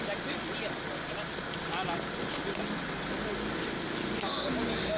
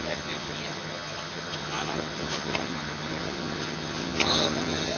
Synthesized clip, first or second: second